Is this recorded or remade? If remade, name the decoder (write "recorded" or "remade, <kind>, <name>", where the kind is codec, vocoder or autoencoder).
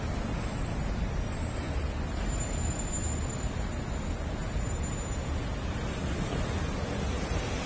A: recorded